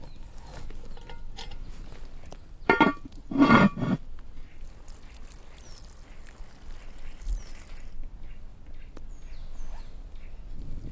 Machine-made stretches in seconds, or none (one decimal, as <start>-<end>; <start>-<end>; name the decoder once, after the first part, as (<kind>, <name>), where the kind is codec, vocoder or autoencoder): none